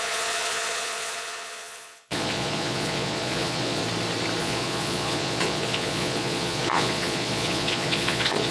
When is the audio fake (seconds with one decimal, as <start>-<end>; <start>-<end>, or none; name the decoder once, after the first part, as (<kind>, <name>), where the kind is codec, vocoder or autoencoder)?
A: 0.0-3.8 (vocoder, Vocos); 4.4-8.5